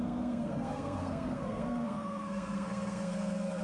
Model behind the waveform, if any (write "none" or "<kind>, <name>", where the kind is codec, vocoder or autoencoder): codec, SNAC